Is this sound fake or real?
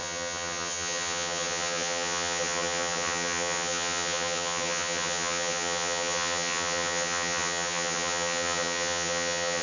fake